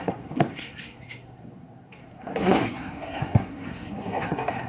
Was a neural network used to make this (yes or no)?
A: yes